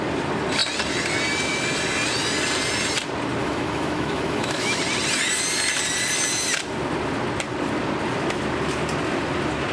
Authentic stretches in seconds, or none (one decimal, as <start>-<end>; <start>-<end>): 0.0-3.4; 4.8-9.7